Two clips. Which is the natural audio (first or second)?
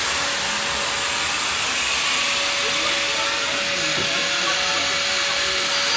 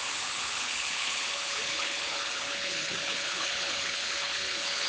first